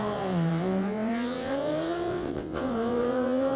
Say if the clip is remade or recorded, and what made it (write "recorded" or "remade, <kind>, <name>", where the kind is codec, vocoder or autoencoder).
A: remade, vocoder, WaveNeXt